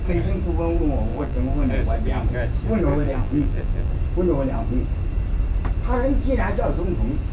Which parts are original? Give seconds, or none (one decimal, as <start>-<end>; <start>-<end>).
0.0-1.1; 1.7-2.9; 3.9-7.3